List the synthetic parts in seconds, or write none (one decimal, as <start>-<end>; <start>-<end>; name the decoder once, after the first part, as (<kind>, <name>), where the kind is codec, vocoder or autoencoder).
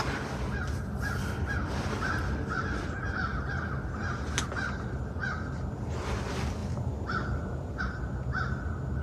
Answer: none